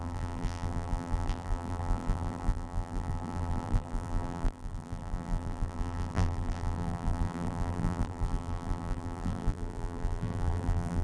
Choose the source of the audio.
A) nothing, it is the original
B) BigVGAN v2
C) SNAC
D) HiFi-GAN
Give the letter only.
B